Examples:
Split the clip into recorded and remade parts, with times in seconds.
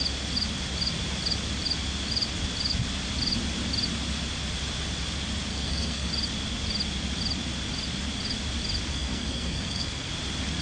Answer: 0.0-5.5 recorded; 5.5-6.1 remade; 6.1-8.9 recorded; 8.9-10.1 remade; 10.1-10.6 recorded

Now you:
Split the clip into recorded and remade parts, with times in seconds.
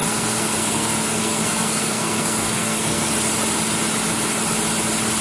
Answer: 0.0-3.1 remade; 3.1-5.2 recorded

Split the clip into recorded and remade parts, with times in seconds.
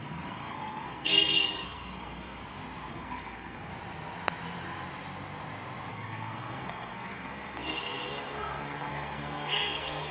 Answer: 0.0-2.4 remade; 2.4-2.9 recorded; 2.9-3.7 remade; 3.7-5.9 recorded; 5.9-10.1 remade